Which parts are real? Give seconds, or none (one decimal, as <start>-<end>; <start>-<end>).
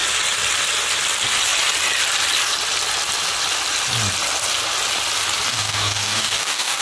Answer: 0.0-5.5